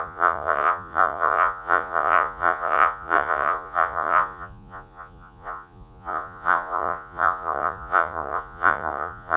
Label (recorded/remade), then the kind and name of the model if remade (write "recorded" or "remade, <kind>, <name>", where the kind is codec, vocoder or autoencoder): remade, vocoder, Vocos